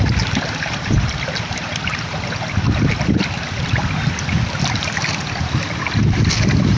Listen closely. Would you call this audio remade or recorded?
recorded